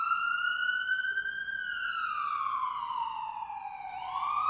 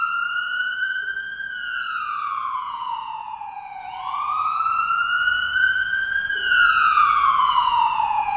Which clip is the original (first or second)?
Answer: first